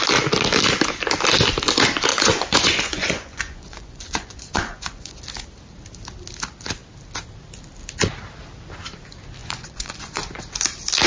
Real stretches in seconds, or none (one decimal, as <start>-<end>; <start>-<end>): 0.0-2.1; 5.2-9.4; 10.4-11.1